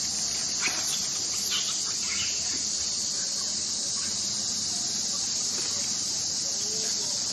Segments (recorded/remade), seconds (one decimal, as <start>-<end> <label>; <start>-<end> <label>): 0.0-7.3 recorded